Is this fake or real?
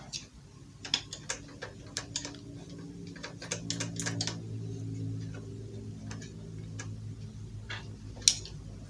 real